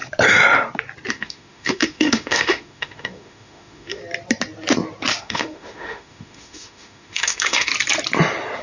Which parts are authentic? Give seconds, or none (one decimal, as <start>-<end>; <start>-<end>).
0.0-1.1; 4.0-5.2; 7.7-8.6